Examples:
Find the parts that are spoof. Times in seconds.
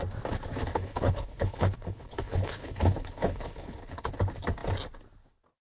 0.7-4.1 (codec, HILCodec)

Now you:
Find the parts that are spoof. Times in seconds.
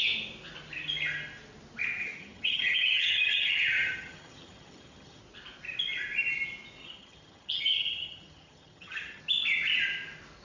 2.0-5.2 (vocoder, HiFi-GAN); 6.8-9.2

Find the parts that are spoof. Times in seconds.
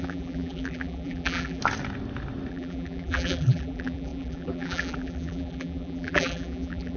0.0-1.6 (vocoder, BigVGAN v2); 2.5-7.0